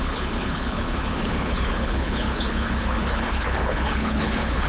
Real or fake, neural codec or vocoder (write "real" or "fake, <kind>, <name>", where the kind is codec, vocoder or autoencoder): fake, codec, HILCodec